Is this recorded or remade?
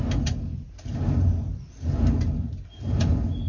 recorded